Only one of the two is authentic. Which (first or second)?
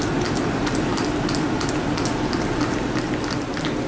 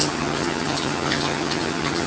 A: first